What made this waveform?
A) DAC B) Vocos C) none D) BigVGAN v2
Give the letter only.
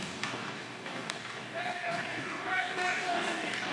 A